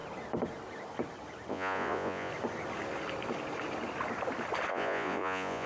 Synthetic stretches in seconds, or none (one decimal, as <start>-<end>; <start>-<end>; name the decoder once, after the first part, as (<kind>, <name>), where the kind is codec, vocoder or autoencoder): 1.5-2.3 (vocoder, Vocos); 4.7-5.7